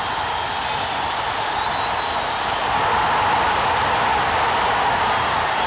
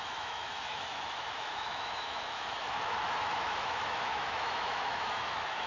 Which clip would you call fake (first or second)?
second